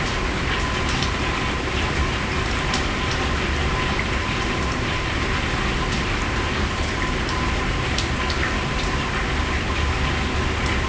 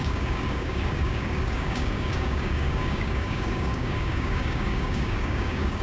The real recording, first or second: first